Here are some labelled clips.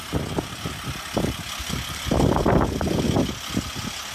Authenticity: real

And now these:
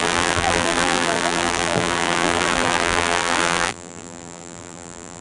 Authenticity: fake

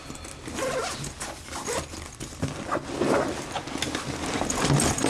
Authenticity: real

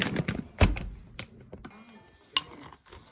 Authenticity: real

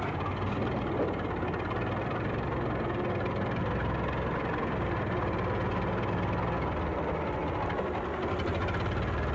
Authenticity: real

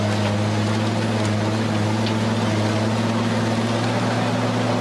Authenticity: real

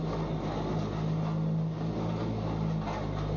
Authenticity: real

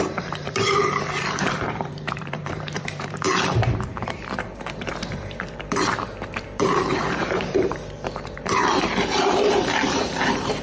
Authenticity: fake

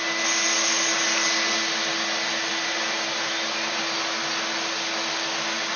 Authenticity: real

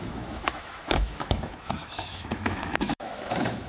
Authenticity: fake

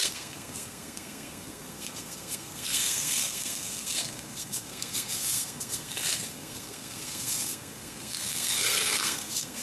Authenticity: fake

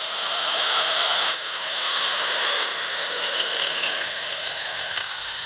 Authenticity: fake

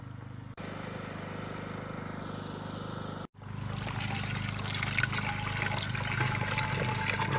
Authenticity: real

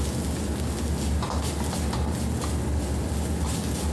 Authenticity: real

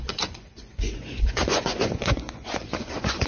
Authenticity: fake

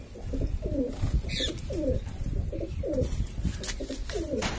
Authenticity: fake